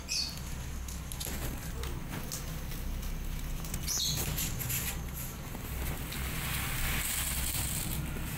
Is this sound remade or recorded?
recorded